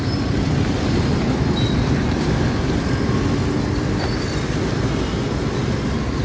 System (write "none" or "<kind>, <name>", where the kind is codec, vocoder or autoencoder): none